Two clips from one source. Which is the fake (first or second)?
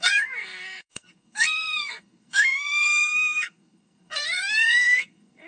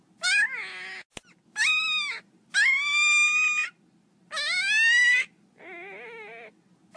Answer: first